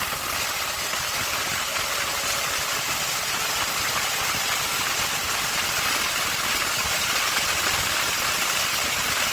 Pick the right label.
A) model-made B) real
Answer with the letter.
B